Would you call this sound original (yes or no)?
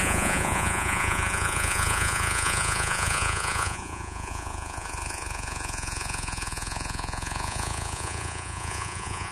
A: no